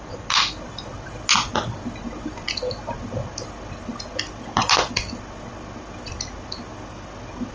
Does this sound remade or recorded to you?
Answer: recorded